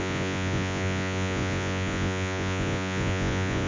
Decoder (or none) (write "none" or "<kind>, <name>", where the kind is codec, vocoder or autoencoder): vocoder, Vocos